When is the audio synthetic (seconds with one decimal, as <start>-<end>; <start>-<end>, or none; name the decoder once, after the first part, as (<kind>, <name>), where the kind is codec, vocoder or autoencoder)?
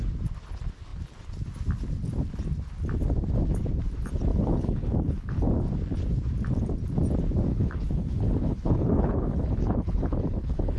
4.3-5.4 (codec, HILCodec); 7.5-10.8